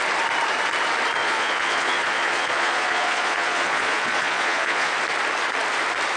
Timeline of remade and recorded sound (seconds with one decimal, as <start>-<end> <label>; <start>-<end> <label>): 0.0-1.2 recorded; 1.2-4.9 remade; 4.9-6.2 recorded